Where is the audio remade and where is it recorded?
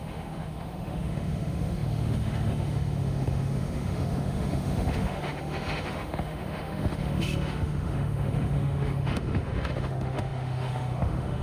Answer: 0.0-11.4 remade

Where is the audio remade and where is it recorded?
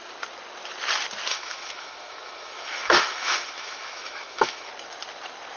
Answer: 0.0-1.3 recorded; 1.3-4.7 remade; 4.7-5.6 recorded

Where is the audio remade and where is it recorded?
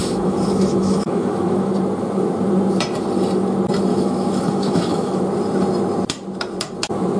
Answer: 0.0-1.7 remade; 1.7-3.9 recorded; 3.9-5.2 remade; 5.2-7.2 recorded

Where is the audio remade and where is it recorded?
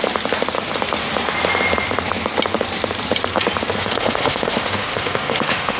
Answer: 0.0-3.8 recorded; 3.8-5.8 remade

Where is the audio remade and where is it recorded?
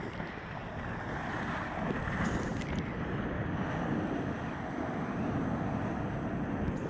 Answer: 0.0-6.9 recorded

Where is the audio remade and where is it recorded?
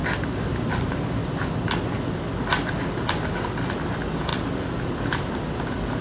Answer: 0.0-6.0 recorded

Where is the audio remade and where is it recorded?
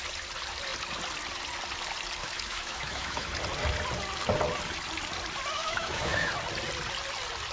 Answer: 0.0-2.2 recorded; 2.2-3.3 remade; 3.3-5.6 recorded; 5.6-6.3 remade; 6.3-7.5 recorded